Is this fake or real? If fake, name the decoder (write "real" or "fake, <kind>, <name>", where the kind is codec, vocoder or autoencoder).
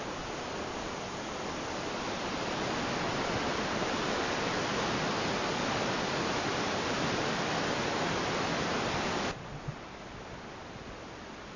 real